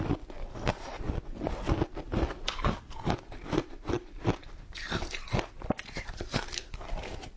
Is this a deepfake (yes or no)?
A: yes